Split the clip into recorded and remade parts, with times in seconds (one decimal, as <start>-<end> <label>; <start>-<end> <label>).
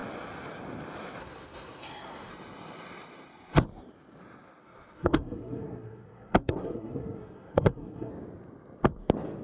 0.0-1.2 recorded; 1.2-2.3 remade; 2.3-4.6 recorded; 4.6-8.1 remade; 8.1-9.4 recorded